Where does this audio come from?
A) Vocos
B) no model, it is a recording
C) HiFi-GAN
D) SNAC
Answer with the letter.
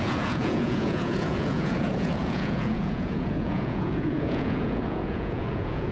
A